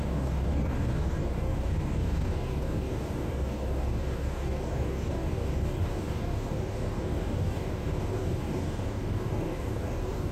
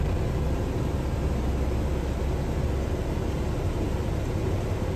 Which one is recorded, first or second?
second